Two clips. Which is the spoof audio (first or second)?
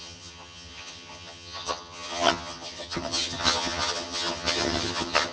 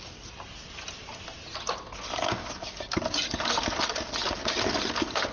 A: first